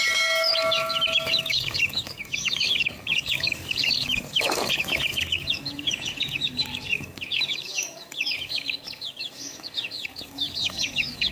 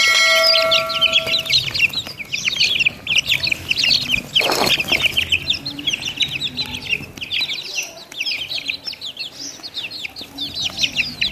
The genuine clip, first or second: second